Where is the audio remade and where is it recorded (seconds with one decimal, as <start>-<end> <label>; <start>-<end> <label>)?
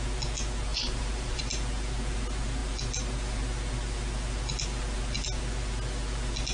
0.0-0.7 recorded; 0.7-1.4 remade; 1.4-6.5 recorded